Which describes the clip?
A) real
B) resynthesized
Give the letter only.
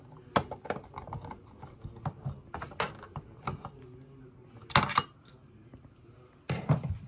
A